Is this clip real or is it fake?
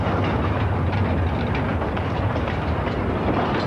real